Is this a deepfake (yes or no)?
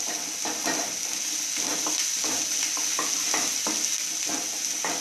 no